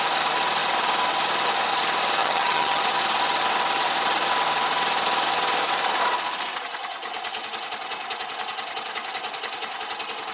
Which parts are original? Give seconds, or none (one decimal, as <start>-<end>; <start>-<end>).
0.0-2.2; 2.8-10.3